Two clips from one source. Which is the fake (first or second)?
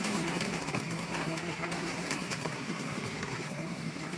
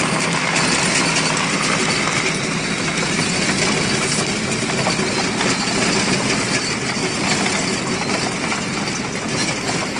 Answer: first